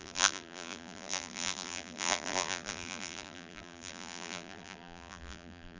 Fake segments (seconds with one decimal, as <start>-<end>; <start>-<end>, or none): 0.0-5.8